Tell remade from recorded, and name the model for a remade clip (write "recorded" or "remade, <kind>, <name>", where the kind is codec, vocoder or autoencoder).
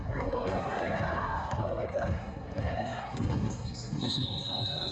remade, codec, SNAC